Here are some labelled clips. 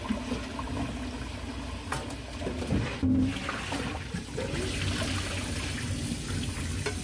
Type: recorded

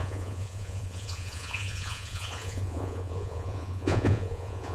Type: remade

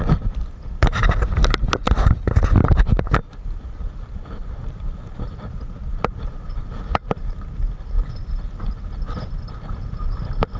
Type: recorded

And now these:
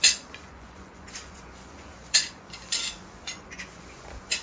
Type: remade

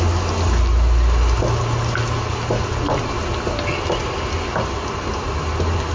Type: recorded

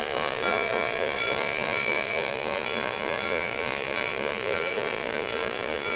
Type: remade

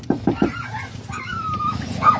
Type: recorded